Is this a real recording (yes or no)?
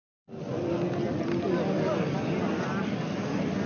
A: yes